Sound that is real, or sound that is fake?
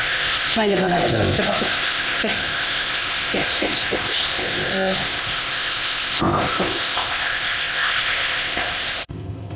fake